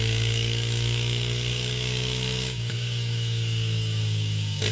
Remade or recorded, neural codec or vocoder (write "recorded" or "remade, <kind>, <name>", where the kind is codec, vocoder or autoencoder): remade, codec, DAC